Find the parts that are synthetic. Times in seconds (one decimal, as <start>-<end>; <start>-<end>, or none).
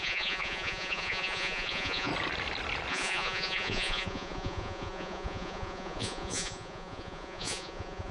0.0-2.1; 2.9-8.1